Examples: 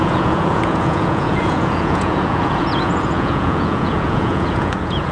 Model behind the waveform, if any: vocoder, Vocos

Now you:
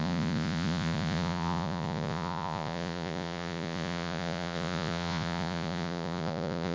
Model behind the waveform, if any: vocoder, Vocos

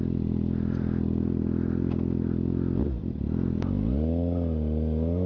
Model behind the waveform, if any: none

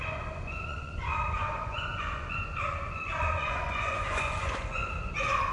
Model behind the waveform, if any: vocoder, Vocos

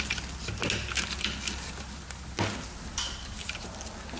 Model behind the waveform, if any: none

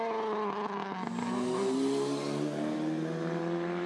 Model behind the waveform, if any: none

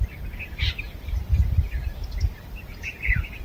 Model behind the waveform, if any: none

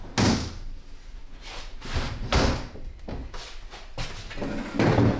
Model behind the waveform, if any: none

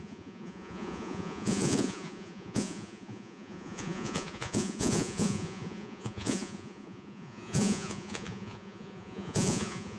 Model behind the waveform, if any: vocoder, Vocos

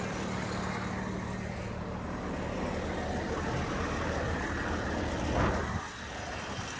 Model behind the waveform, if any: none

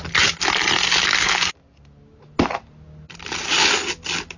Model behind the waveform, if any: none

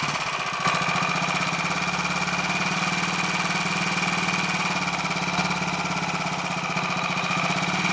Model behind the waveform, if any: none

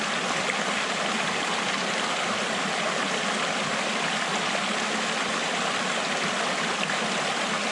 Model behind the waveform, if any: none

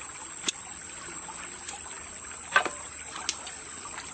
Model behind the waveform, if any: none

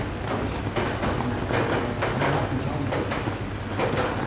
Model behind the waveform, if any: none